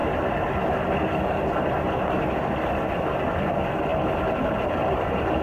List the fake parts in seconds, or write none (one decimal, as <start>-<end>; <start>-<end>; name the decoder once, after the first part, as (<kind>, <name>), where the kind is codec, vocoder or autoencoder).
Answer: none